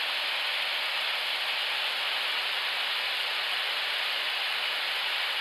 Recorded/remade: recorded